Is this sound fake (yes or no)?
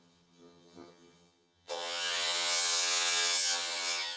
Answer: yes